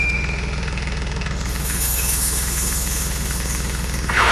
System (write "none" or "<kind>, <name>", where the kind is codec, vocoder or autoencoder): autoencoder, DAC-VAE